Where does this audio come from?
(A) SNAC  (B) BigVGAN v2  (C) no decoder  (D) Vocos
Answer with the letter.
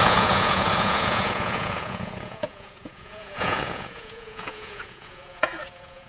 D